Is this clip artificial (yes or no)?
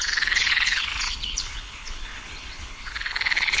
yes